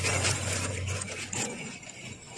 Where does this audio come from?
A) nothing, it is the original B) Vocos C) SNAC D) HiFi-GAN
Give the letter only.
B